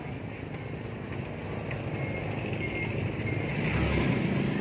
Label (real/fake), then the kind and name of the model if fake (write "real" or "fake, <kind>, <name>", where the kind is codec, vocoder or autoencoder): real